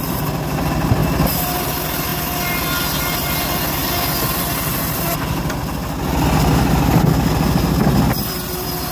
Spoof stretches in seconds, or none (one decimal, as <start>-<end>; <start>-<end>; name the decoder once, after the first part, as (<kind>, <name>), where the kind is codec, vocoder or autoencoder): none